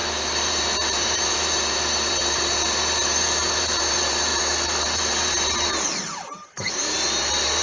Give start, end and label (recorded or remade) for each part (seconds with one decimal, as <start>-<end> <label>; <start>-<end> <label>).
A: 0.0-7.6 remade